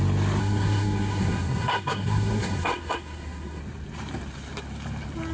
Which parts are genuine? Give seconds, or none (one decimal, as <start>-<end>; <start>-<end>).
0.0-0.4; 3.6-5.3